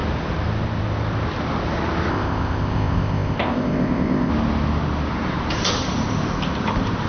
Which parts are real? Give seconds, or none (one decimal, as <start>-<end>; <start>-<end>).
0.0-2.1; 4.3-7.1

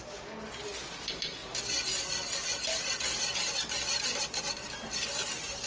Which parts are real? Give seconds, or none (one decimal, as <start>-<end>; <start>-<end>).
0.0-5.7